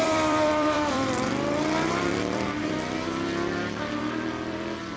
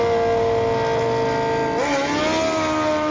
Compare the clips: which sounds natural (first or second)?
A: second